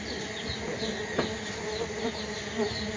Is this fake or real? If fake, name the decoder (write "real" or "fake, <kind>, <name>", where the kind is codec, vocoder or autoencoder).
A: real